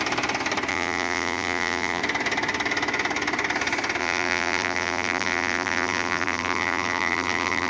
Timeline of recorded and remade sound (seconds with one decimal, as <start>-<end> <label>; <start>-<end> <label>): 0.0-0.7 recorded; 0.7-2.0 remade; 2.0-4.0 recorded; 4.0-7.7 remade